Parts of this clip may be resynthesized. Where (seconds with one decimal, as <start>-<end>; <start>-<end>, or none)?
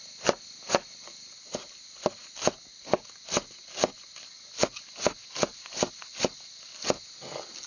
none